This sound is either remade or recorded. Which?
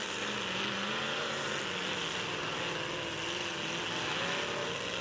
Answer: recorded